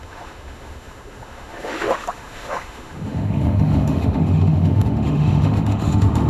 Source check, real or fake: fake